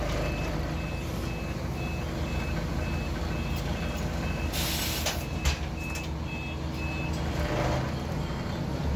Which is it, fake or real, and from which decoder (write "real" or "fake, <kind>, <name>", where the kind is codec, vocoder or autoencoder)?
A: real